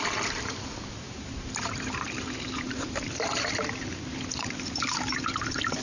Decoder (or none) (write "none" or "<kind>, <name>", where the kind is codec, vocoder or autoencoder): vocoder, BigVGAN v2